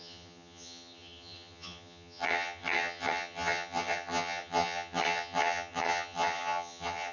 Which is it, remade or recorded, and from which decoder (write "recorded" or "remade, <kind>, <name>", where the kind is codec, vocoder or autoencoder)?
remade, vocoder, HiFi-GAN